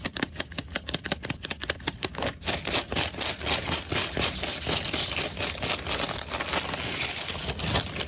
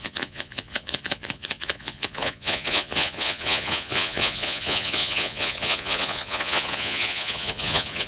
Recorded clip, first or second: first